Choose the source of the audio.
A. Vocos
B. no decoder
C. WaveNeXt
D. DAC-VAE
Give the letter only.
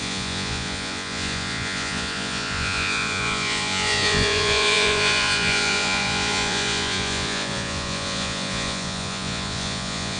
A